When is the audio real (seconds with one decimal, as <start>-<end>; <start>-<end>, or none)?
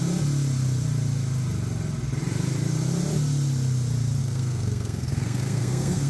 0.0-4.2